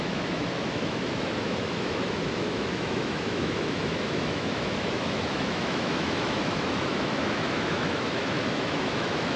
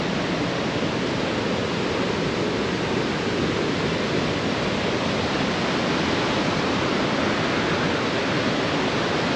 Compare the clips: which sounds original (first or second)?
second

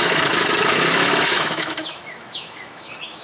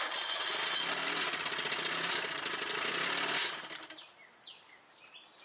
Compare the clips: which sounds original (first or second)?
second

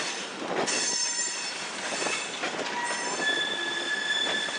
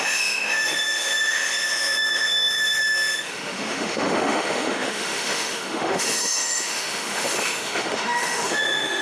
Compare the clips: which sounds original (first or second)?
first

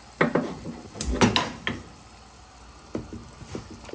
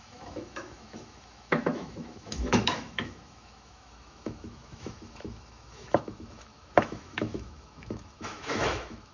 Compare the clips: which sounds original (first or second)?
first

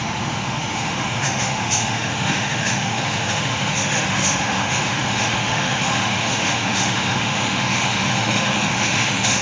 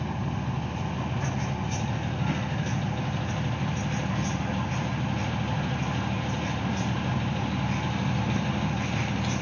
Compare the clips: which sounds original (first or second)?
second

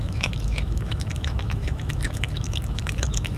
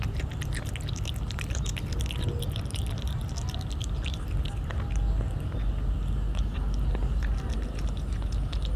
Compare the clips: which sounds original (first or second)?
second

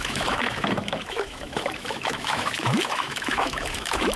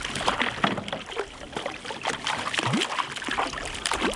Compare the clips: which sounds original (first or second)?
second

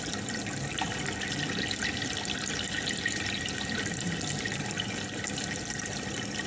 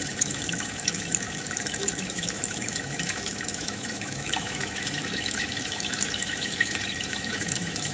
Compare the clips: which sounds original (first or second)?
first